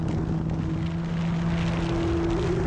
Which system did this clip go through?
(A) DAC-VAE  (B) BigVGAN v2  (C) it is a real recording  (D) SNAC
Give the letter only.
C